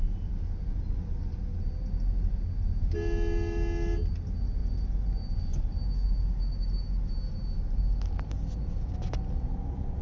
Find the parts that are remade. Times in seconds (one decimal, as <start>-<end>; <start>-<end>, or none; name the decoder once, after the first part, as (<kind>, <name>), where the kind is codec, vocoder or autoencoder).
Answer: none